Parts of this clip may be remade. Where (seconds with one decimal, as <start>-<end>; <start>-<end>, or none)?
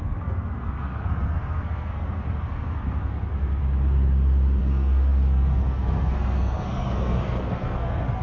0.0-3.6; 4.6-8.2